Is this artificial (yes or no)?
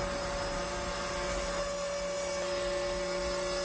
no